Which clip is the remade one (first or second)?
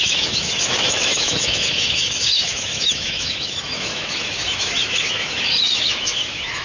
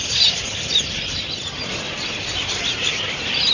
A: first